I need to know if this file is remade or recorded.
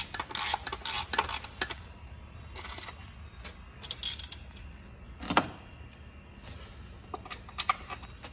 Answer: recorded